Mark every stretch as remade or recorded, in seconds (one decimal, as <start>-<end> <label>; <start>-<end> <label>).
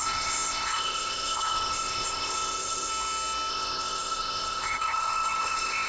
0.0-2.9 remade; 2.9-3.5 recorded; 3.5-5.9 remade